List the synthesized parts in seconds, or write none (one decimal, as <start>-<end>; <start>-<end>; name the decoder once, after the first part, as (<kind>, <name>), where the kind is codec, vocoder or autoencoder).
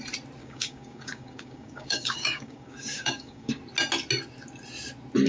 0.4-3.6 (codec, DAC)